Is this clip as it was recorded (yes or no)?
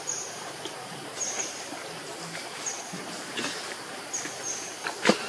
no